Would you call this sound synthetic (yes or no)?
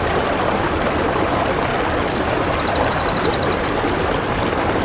no